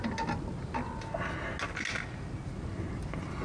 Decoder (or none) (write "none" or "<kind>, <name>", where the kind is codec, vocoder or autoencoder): none